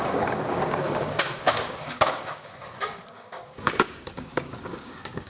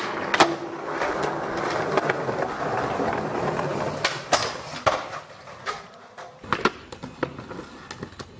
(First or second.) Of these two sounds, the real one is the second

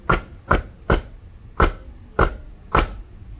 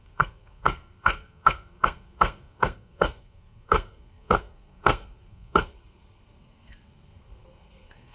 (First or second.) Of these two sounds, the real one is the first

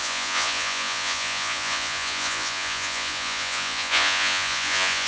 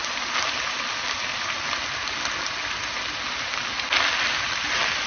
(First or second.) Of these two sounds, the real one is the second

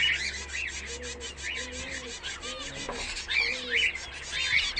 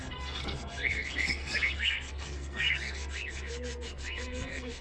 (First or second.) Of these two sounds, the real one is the first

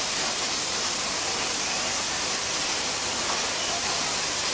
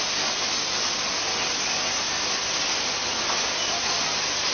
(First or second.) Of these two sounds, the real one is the second